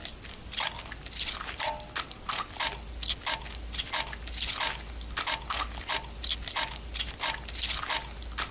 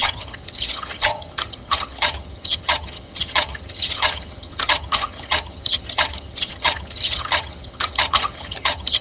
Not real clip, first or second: second